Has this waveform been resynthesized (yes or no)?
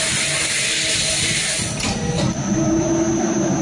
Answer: no